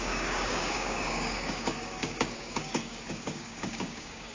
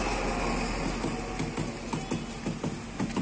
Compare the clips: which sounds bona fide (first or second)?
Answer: second